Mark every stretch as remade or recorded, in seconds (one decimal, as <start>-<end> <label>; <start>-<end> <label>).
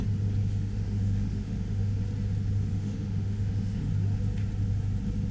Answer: 0.0-0.4 recorded; 0.4-2.0 remade; 2.0-2.7 recorded; 2.7-3.9 remade; 3.9-5.3 recorded